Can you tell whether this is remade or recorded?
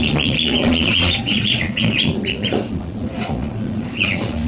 remade